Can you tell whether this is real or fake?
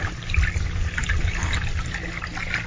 real